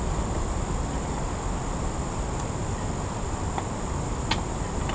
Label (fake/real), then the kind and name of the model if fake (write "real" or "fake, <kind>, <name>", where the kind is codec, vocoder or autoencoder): real